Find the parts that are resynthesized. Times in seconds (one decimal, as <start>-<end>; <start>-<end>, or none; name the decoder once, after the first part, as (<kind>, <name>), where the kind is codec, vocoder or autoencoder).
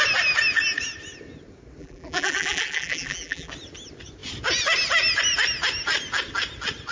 1.8-3.5 (vocoder, BigVGAN v2)